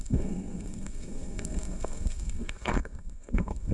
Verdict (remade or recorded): remade